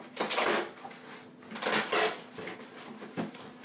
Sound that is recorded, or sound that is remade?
recorded